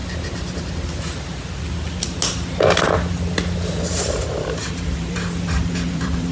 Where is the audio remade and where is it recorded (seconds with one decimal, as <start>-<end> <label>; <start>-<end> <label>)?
0.0-3.8 recorded; 3.8-6.3 remade